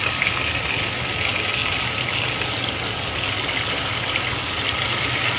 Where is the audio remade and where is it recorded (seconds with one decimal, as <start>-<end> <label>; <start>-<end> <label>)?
0.0-5.4 recorded